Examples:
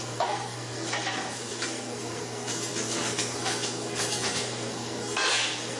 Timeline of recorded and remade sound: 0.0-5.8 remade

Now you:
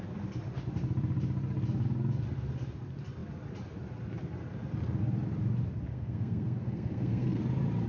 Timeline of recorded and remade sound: 0.0-5.9 recorded; 5.9-7.4 remade; 7.4-7.9 recorded